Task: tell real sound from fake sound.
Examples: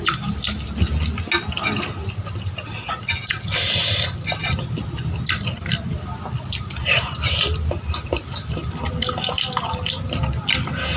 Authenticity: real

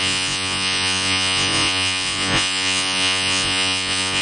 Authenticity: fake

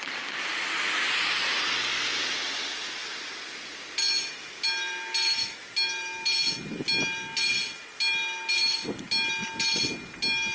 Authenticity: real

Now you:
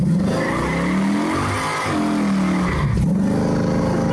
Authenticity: real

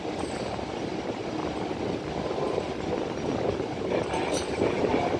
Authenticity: real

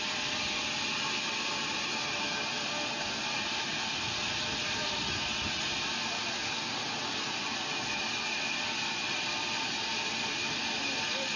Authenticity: real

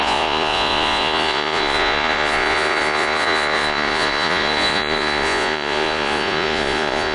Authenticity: fake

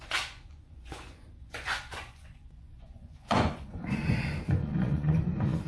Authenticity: fake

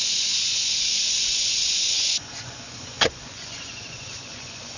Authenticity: fake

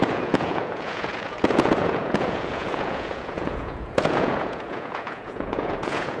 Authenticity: fake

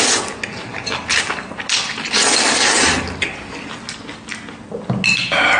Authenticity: real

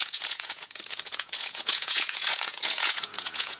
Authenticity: fake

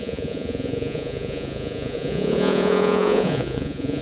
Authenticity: fake